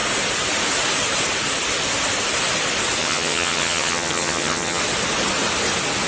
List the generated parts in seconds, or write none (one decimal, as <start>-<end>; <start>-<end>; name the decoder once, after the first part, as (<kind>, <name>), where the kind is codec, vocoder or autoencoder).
3.0-4.8 (vocoder, HiFi-GAN)